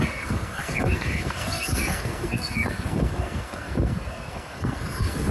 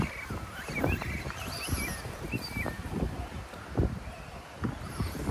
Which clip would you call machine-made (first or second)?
first